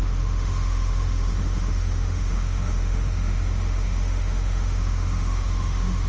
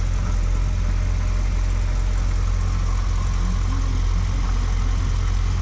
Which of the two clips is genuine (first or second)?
second